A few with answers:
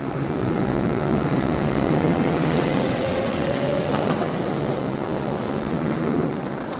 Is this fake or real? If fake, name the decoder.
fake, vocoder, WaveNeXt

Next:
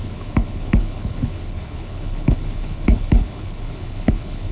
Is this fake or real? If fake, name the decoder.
fake, codec, HILCodec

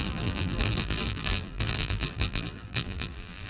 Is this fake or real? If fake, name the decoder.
fake, vocoder, BigVGAN v2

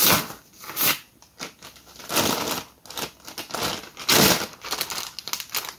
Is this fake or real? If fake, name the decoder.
real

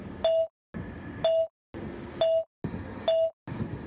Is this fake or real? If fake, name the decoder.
real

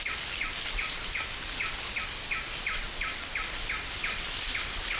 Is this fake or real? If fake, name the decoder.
real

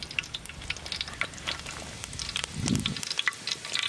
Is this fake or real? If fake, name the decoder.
real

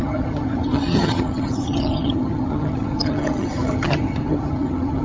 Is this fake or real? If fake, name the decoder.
fake, vocoder, HiFi-GAN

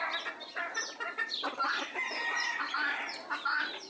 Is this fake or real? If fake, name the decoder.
real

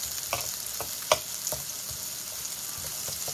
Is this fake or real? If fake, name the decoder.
real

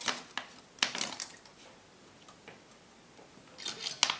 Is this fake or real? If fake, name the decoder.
real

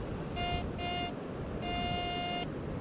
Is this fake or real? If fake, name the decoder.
real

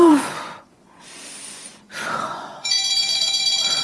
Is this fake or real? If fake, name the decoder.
fake, vocoder, Vocos